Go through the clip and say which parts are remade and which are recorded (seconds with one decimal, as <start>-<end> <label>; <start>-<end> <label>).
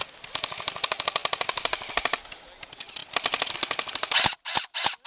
0.0-5.1 recorded